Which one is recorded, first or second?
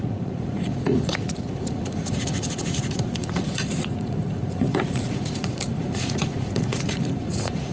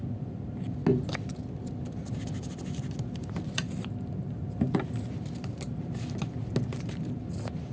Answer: second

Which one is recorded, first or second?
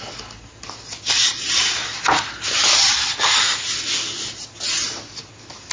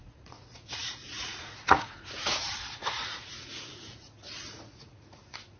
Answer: first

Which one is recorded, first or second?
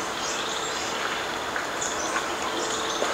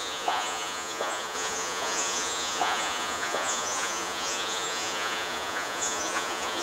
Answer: first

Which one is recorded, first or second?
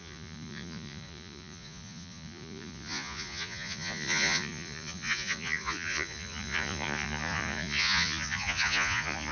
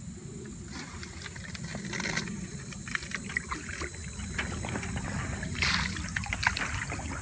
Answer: second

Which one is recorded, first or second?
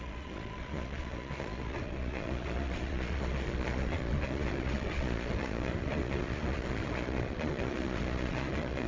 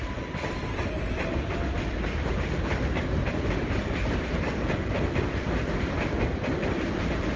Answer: second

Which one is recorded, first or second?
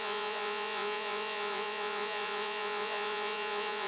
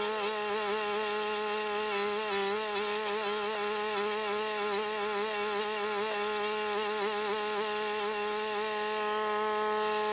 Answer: second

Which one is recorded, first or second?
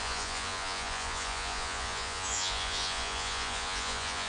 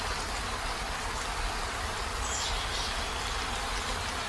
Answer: second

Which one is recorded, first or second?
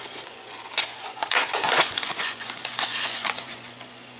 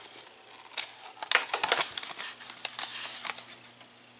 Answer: second